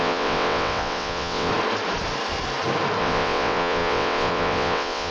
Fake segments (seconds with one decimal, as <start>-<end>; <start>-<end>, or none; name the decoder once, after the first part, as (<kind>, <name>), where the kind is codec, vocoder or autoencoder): 0.0-1.5 (vocoder, WaveNeXt); 3.0-5.1